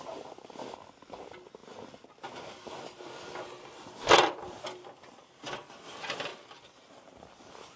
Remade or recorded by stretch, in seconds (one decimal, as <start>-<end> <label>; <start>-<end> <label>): 0.0-6.3 recorded; 6.3-7.2 remade; 7.2-7.8 recorded